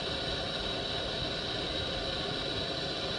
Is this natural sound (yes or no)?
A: yes